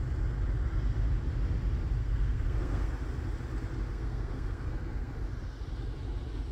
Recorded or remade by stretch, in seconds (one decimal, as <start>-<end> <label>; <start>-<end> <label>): 0.0-2.0 recorded; 2.0-2.9 remade; 2.9-3.9 recorded; 3.9-5.1 remade; 5.1-6.5 recorded